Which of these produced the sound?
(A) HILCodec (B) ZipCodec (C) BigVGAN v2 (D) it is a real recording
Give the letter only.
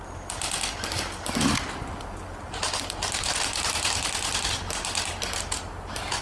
D